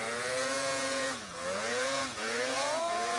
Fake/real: fake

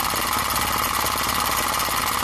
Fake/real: real